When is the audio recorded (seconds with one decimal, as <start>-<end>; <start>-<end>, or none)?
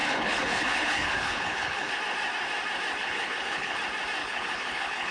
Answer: 1.9-3.0; 3.8-4.2